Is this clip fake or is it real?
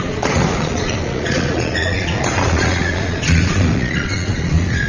fake